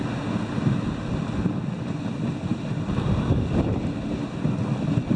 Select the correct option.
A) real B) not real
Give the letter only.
A